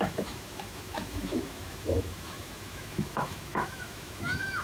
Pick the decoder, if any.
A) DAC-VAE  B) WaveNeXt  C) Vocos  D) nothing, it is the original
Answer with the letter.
A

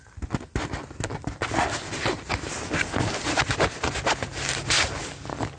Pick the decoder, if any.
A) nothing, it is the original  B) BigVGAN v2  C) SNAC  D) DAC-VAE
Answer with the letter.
A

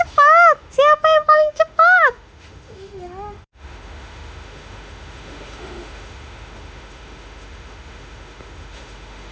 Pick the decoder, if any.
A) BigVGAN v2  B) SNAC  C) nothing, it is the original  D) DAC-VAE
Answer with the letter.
D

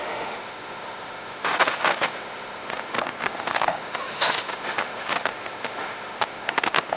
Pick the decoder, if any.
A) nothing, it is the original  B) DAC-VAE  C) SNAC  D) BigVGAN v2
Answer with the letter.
B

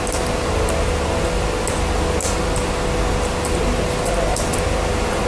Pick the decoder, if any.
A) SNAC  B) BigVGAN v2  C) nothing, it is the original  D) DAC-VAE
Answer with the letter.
C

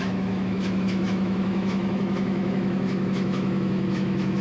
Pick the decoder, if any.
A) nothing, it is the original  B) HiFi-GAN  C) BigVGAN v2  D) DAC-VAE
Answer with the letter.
D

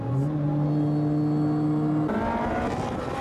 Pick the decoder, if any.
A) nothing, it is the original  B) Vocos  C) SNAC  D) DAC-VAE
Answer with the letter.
A